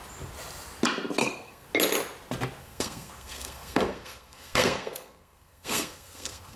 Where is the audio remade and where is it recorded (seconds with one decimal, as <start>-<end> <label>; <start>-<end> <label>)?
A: 0.0-1.2 recorded; 1.2-1.7 remade; 1.7-2.6 recorded; 2.6-6.6 remade

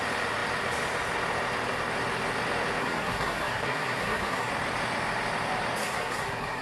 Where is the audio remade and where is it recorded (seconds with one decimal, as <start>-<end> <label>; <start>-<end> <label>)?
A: 0.0-2.8 recorded; 2.8-4.5 remade; 4.5-5.8 recorded; 5.8-6.6 remade

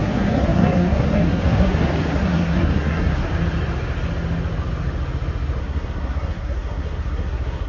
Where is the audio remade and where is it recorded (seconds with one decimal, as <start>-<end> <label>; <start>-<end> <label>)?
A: 0.0-3.3 remade; 3.3-5.6 recorded; 5.6-7.7 remade